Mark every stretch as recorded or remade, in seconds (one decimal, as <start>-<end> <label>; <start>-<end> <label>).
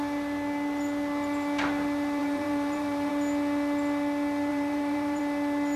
0.0-2.2 recorded; 2.2-3.1 remade; 3.1-4.5 recorded; 4.5-5.2 remade; 5.2-5.8 recorded